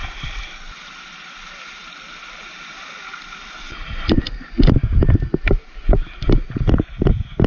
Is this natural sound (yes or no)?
yes